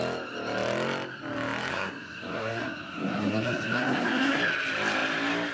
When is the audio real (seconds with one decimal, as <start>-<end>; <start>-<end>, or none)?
0.0-1.7; 4.4-5.5